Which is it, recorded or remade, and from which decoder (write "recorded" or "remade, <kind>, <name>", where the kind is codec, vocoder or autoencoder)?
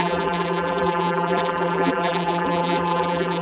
remade, vocoder, BigVGAN v2